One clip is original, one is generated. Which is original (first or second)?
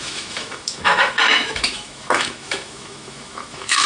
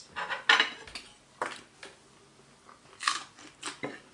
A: second